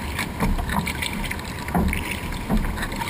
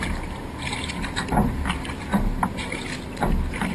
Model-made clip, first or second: first